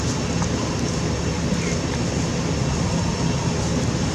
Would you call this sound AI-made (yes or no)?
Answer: no